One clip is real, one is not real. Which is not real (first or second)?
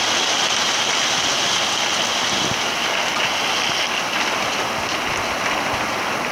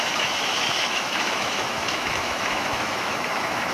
second